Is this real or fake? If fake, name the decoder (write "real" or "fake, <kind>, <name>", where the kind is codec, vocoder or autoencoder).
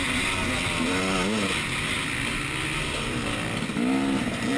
real